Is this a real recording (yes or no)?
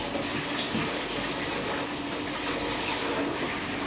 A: yes